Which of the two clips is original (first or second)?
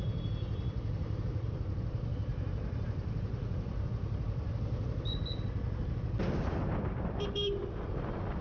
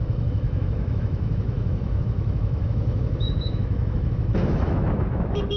first